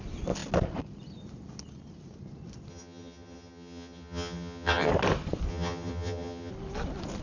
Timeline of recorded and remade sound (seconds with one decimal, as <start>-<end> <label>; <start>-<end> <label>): 0.0-2.7 recorded; 2.7-4.9 remade; 4.9-5.5 recorded; 5.5-6.5 remade; 6.5-7.2 recorded